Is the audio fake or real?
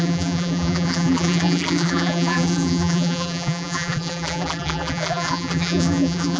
fake